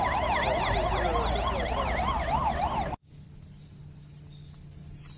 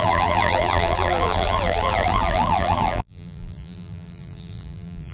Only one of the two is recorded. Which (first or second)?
first